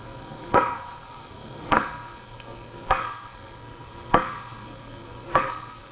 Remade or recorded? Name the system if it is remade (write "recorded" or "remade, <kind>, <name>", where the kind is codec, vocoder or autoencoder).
remade, codec, SNAC